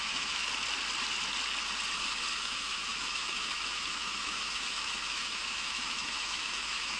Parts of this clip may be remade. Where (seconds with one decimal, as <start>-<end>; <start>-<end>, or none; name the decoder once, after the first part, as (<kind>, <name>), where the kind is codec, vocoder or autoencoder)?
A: 0.0-0.4 (autoencoder, DAC-VAE); 2.3-7.0